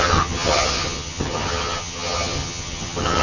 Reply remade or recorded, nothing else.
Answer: remade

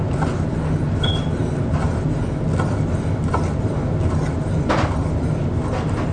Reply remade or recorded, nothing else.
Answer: recorded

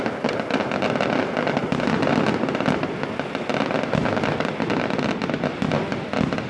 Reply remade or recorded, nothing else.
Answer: recorded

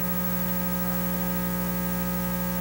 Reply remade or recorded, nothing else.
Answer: recorded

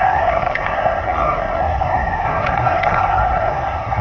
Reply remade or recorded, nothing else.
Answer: remade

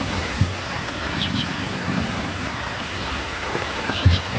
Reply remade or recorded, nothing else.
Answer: remade